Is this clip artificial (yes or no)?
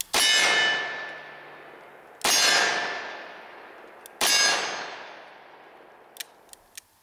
no